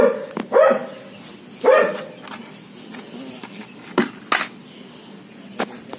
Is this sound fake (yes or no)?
no